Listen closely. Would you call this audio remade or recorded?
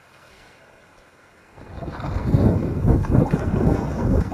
remade